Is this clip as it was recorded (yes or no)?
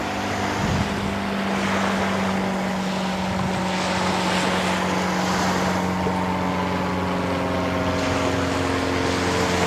yes